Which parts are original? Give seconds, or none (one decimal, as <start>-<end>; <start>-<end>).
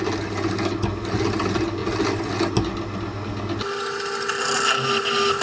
0.0-5.4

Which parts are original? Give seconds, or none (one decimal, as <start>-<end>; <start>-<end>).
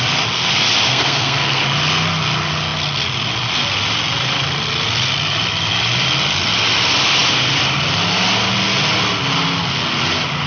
0.0-0.9; 1.6-10.5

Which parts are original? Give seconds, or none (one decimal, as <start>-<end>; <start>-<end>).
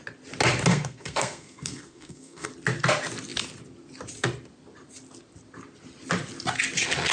0.0-0.7; 2.5-7.1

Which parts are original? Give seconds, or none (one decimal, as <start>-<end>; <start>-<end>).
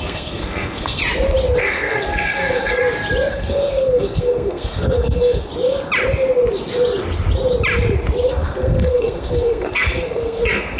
1.0-1.6; 2.8-3.3; 5.5-8.3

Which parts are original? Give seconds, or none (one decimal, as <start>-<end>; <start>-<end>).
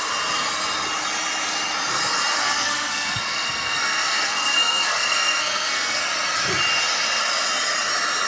0.0-2.4; 6.0-8.3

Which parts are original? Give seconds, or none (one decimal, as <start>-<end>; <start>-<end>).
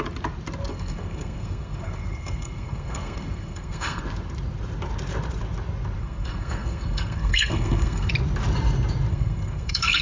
0.0-0.7; 4.0-6.0; 8.1-9.1